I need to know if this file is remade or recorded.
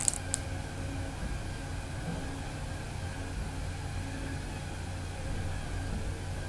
recorded